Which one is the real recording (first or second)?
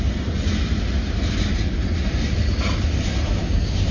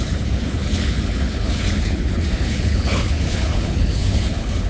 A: first